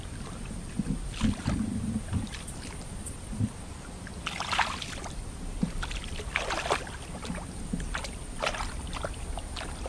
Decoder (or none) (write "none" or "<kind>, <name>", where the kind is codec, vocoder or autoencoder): vocoder, BigVGAN v2